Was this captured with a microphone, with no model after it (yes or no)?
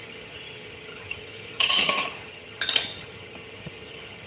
no